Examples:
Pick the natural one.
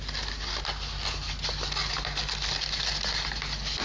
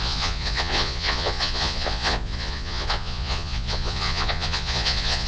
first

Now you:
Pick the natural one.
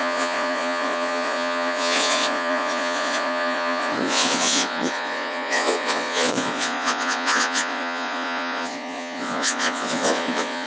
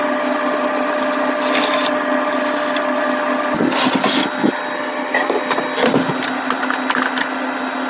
second